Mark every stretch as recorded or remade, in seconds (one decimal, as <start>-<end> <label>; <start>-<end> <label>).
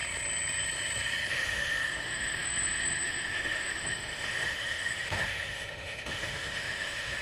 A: 0.0-1.3 recorded; 1.3-7.2 remade